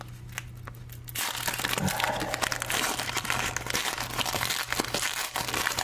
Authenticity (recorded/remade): recorded